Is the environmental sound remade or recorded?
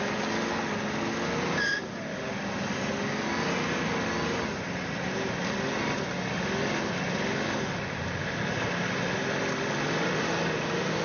recorded